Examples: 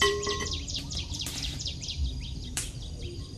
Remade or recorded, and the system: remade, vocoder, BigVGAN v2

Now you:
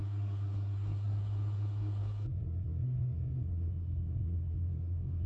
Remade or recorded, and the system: remade, codec, SNAC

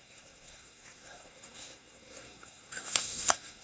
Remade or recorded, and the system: remade, codec, SNAC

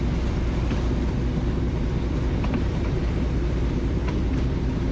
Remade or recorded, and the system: recorded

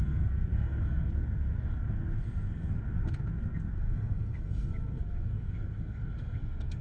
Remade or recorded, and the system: remade, codec, SNAC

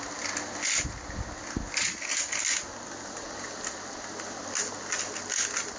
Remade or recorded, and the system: recorded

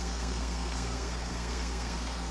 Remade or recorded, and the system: remade, codec, SNAC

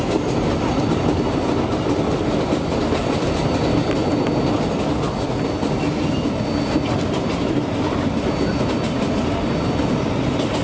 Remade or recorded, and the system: recorded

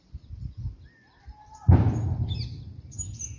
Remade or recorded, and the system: recorded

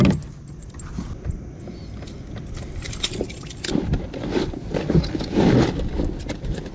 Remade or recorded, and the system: recorded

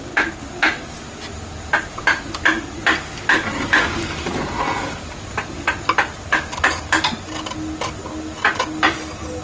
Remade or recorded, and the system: recorded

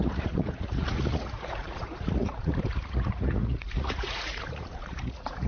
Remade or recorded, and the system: remade, vocoder, Vocos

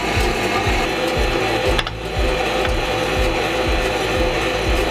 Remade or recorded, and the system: recorded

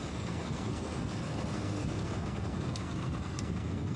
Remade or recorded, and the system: remade, codec, SNAC